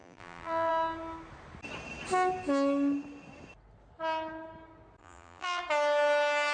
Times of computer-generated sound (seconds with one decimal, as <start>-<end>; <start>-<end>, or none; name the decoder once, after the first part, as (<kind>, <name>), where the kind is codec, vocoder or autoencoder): 0.0-0.7 (vocoder, BigVGAN v2); 5.0-5.6